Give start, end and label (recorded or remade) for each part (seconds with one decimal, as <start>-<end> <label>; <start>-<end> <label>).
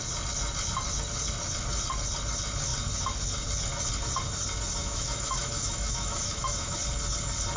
0.0-4.8 recorded; 4.8-6.8 remade; 6.8-7.6 recorded